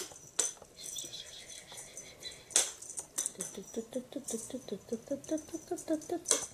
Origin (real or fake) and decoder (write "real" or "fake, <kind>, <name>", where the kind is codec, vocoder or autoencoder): real